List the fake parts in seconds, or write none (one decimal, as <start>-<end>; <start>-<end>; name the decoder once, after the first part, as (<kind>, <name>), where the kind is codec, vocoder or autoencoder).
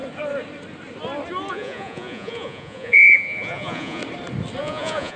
1.5-4.0 (vocoder, Vocos); 4.6-5.2